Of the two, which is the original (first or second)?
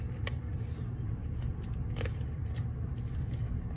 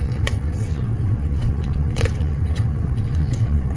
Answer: first